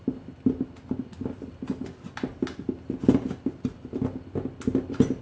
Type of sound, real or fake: real